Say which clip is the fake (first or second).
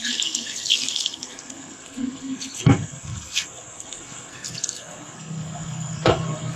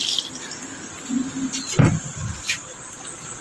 first